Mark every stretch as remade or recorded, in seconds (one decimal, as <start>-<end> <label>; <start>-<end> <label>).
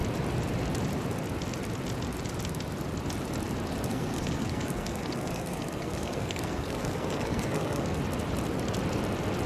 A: 0.0-3.9 recorded; 3.9-8.0 remade; 8.0-9.5 recorded